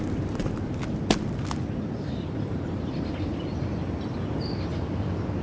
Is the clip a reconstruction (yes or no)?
no